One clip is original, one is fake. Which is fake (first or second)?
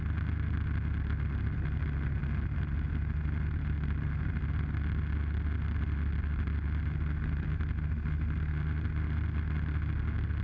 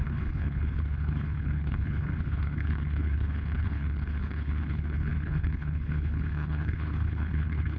second